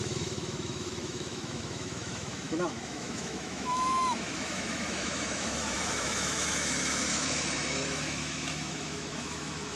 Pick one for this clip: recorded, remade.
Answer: remade